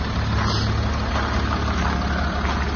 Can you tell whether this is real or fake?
real